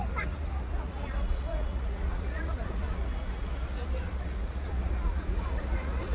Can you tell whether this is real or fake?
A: fake